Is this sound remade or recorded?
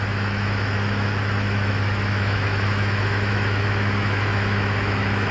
remade